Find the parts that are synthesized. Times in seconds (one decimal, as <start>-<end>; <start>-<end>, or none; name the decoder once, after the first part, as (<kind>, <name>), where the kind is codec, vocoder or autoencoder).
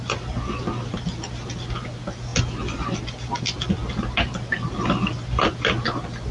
none